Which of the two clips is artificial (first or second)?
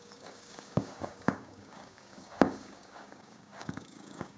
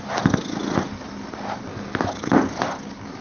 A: first